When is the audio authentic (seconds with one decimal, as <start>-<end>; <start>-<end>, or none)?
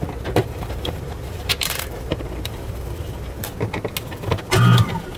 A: 0.0-0.4; 3.5-5.2